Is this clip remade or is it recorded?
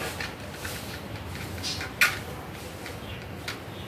recorded